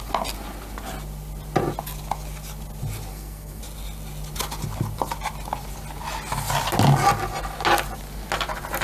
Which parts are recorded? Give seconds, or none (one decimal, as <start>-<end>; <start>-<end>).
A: 0.0-3.1; 3.6-8.8